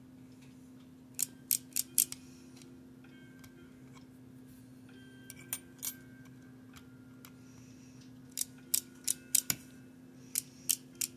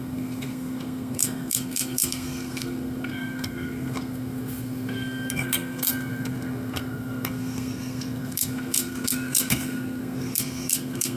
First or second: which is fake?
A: second